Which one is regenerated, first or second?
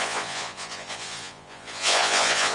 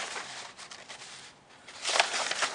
first